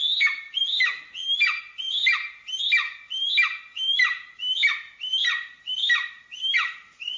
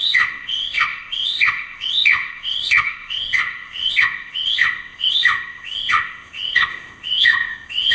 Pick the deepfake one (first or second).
second